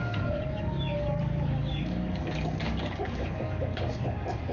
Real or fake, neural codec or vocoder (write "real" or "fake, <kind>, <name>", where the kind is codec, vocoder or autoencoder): fake, codec, DAC